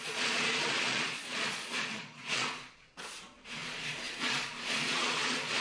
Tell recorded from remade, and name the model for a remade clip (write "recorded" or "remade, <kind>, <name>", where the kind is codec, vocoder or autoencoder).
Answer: remade, vocoder, Vocos